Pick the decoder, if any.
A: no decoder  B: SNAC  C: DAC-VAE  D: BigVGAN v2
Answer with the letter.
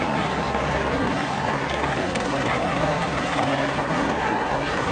B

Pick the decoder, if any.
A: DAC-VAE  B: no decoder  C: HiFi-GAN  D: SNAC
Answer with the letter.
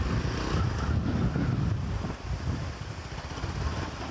B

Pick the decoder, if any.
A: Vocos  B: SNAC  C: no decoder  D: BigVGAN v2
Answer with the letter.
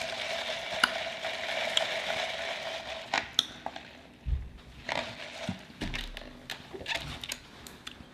C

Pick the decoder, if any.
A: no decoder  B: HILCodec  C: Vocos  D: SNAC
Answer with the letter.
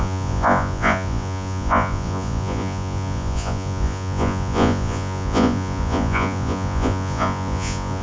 C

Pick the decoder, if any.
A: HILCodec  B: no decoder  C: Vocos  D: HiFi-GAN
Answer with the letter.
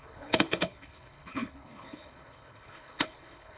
A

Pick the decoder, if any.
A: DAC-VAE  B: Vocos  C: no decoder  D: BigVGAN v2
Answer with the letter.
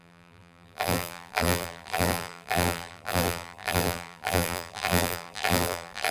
D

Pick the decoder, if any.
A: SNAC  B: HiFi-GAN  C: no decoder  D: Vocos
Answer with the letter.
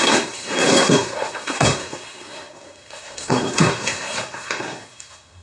A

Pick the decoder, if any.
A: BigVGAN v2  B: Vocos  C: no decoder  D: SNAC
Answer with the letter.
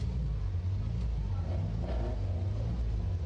C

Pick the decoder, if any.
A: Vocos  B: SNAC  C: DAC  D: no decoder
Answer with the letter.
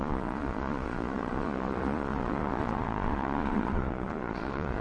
A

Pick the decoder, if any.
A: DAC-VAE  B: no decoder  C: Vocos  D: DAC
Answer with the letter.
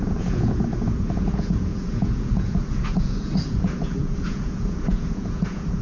C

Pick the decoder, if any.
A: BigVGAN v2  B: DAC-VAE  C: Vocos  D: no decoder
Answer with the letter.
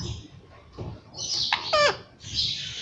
D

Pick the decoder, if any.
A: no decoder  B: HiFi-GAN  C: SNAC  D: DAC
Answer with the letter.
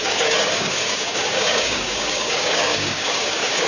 D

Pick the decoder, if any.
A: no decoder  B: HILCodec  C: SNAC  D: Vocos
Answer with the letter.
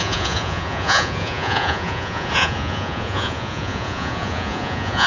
D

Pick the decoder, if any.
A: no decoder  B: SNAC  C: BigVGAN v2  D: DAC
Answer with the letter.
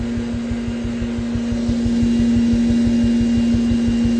A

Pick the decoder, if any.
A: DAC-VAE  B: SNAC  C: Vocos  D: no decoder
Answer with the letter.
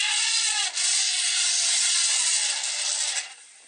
D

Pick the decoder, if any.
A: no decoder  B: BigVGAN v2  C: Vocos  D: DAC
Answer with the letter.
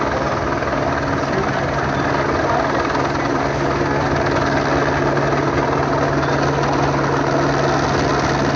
A